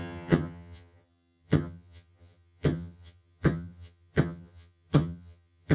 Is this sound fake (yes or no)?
yes